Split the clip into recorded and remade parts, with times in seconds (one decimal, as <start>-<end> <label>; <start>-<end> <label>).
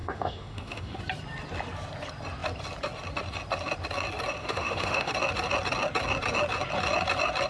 0.0-1.0 remade; 1.0-4.4 recorded; 4.4-5.1 remade; 5.1-7.5 recorded